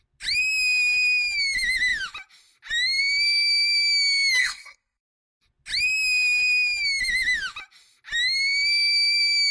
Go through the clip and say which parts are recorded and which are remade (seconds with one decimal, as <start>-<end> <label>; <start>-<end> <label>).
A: 0.0-4.4 recorded; 4.4-5.0 remade; 5.0-9.5 recorded